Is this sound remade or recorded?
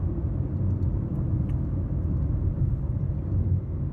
recorded